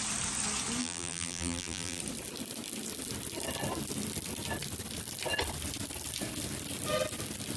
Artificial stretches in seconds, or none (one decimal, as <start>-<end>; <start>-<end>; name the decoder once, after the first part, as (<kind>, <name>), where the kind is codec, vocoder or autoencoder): 0.8-2.0 (vocoder, BigVGAN v2)